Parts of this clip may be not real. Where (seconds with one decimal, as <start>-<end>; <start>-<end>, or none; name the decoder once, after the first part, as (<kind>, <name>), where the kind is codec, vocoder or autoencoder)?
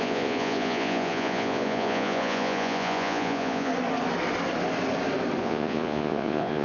0.0-3.7 (vocoder, Vocos); 5.4-6.6